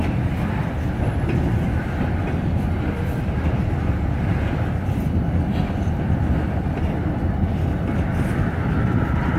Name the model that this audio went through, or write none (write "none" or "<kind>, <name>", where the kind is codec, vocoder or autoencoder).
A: none